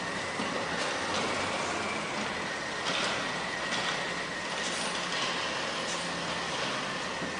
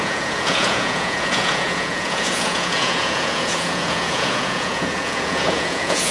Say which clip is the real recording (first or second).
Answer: first